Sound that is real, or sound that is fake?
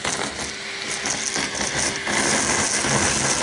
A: real